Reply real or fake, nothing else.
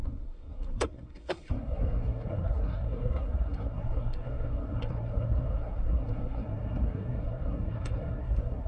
fake